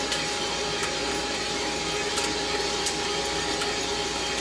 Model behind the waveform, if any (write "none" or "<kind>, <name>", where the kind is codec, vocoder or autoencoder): none